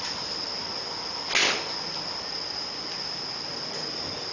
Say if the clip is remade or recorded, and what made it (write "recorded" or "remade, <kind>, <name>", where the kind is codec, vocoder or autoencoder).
recorded